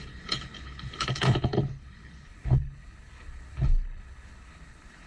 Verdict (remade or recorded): remade